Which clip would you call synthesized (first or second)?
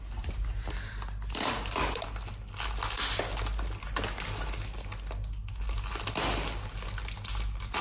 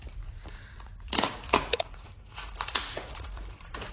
second